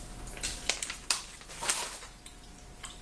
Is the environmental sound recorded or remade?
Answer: recorded